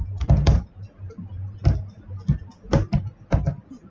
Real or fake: real